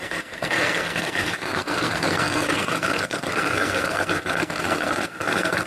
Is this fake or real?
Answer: fake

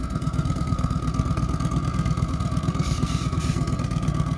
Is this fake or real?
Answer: fake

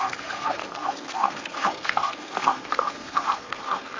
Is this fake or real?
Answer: fake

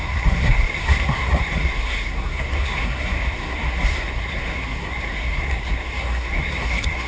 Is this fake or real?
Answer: fake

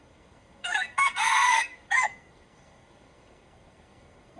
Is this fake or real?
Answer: fake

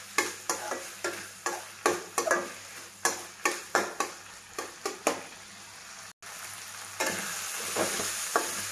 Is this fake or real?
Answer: real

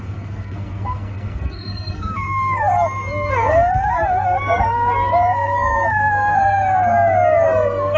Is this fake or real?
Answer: fake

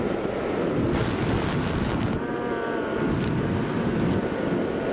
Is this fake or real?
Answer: real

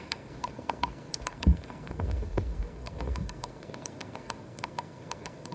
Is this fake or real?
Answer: fake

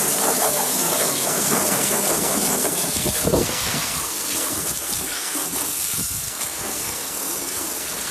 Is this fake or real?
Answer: fake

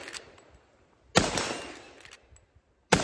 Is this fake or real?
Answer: real